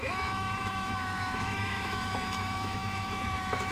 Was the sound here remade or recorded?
remade